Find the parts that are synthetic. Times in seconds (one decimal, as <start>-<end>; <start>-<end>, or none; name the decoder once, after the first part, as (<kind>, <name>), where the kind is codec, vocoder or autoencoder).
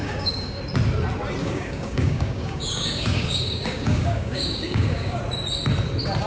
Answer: 0.0-0.6 (codec, DAC); 1.4-5.2